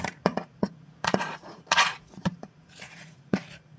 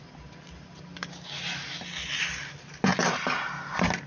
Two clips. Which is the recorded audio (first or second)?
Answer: second